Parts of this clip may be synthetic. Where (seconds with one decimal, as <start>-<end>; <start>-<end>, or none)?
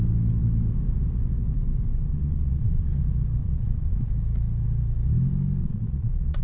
2.1-3.0; 3.4-4.1; 5.6-6.4